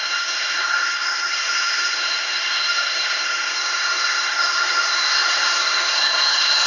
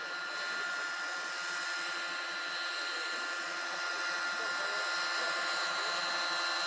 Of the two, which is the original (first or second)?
second